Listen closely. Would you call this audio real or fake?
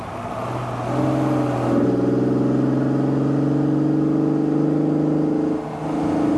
real